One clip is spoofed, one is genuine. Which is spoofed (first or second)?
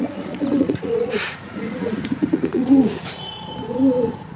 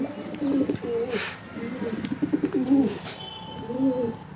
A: first